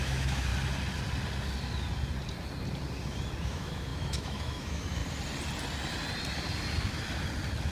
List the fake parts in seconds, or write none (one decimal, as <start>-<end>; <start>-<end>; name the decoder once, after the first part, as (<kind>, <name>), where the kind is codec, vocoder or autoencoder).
0.0-0.5 (autoencoder, DAC-VAE); 3.4-5.0